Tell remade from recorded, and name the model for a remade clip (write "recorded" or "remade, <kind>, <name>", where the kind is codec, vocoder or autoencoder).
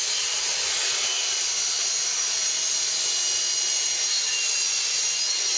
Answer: recorded